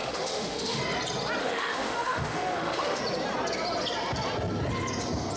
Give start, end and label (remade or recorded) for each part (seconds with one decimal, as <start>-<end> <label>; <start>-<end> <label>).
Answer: 0.0-0.8 remade; 0.8-1.4 recorded; 1.4-3.0 remade; 3.0-5.4 recorded